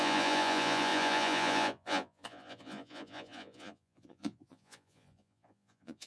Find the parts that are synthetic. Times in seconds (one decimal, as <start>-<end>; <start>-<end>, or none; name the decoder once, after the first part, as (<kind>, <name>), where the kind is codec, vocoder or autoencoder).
0.0-6.1 (vocoder, Vocos)